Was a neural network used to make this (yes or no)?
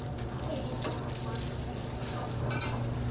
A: no